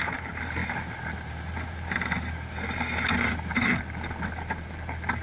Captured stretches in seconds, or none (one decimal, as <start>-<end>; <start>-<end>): 0.0-5.2